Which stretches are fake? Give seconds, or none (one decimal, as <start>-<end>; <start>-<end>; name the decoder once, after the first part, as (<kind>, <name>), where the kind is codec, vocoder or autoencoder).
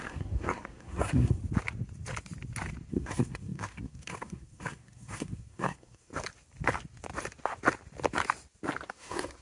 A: 0.0-1.4 (codec, SNAC); 2.9-6.1; 8.9-9.4